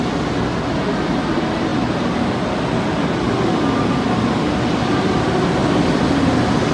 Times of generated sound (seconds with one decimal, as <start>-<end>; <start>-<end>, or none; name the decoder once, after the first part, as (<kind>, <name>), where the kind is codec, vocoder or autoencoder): none